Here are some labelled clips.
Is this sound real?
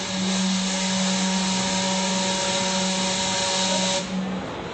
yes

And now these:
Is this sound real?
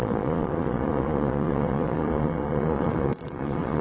no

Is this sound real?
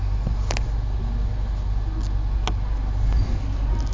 yes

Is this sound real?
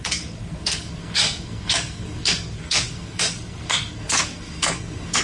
no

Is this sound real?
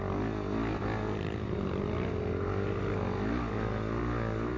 yes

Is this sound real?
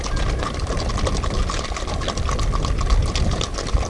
yes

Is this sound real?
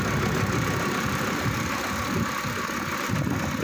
yes